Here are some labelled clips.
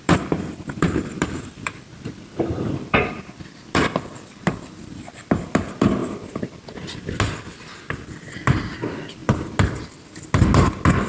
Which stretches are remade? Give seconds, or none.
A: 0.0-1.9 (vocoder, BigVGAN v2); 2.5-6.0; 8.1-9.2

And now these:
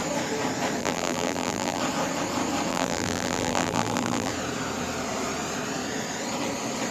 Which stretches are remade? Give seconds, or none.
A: 0.8-1.8 (vocoder, BigVGAN v2); 2.7-4.3

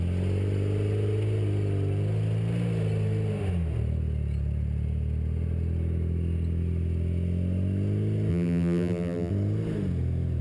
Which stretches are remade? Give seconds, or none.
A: 8.3-9.3 (vocoder, BigVGAN v2)